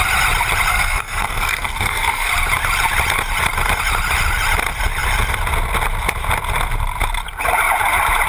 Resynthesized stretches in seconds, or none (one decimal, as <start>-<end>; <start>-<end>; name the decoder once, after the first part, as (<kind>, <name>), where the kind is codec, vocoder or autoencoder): 0.7-2.3 (codec, SNAC)